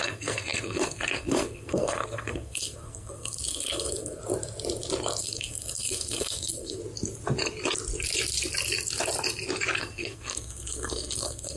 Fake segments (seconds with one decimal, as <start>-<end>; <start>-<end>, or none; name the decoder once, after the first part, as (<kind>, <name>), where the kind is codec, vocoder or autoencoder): 0.0-4.2 (codec, SNAC); 5.2-6.8; 9.8-11.6